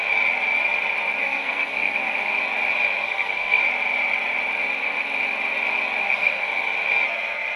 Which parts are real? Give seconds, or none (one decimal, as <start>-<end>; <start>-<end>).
0.0-1.2; 2.3-3.0; 3.6-6.0; 6.5-7.6